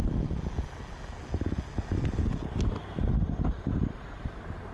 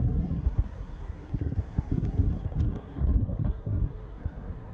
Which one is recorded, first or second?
first